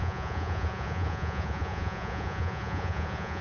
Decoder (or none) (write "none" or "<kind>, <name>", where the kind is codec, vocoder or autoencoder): vocoder, Vocos